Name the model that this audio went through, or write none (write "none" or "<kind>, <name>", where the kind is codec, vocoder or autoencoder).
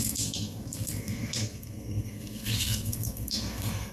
codec, SNAC